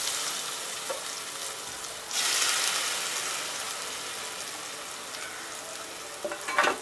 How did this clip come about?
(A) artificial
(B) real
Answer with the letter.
B